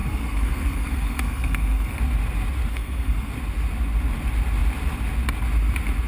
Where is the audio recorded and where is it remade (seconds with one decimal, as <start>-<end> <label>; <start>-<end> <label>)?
0.0-2.0 remade; 2.0-2.7 recorded; 2.7-3.3 remade; 3.3-6.1 recorded